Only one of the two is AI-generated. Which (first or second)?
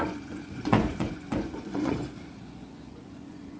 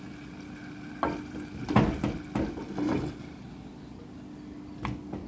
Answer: first